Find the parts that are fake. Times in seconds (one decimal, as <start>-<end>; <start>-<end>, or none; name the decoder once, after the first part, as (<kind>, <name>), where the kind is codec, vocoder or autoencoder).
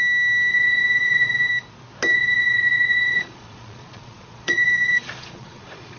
0.5-1.5 (vocoder, Vocos); 2.1-6.0